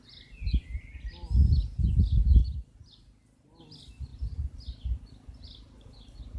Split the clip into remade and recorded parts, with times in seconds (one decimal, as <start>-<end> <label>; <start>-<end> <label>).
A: 0.0-6.4 recorded